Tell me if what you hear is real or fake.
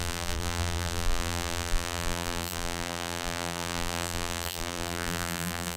fake